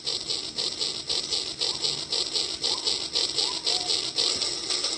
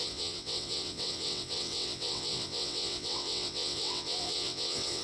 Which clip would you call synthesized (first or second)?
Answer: second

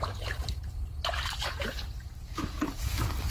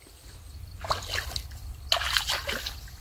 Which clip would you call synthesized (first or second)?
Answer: first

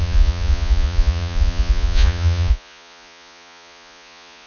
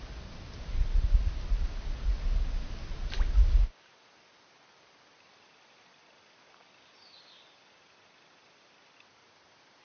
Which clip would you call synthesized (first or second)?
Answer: first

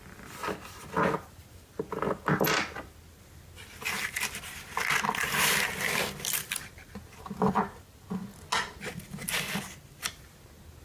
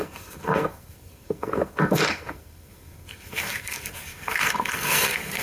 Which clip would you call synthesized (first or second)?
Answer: second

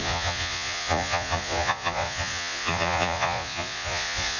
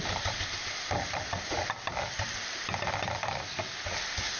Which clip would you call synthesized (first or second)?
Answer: first